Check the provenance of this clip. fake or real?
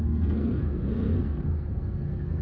fake